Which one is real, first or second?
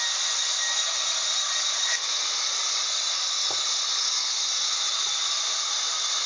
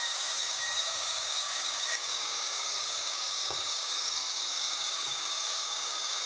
first